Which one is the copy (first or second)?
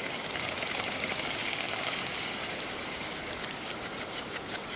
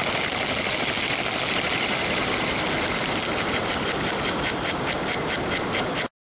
first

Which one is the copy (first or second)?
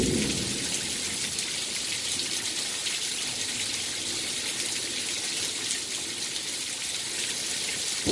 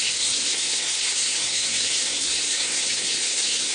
second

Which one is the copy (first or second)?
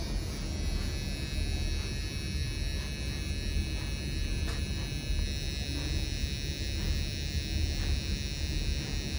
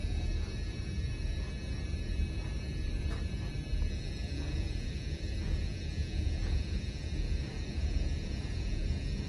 second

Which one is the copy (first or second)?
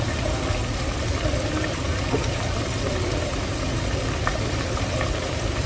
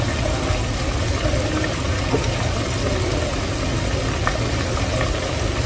first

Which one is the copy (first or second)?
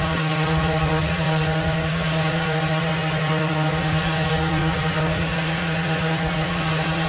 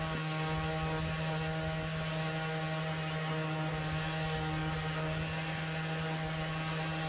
first